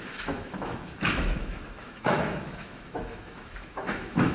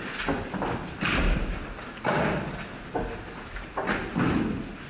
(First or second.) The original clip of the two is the second